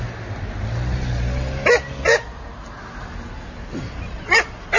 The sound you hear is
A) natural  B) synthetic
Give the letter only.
A